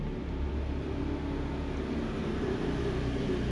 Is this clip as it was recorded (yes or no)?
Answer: yes